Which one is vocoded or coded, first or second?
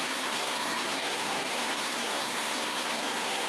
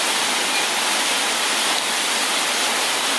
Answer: first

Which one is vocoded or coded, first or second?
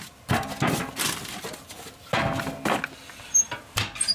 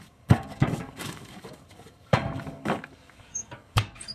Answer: second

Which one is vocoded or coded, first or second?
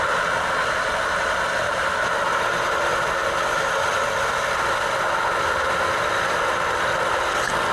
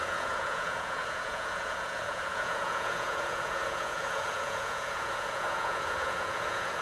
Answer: second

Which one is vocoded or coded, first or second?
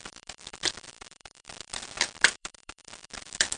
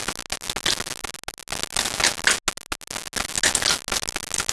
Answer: first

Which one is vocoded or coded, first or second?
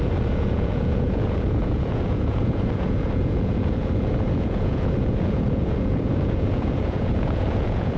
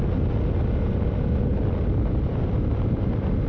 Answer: first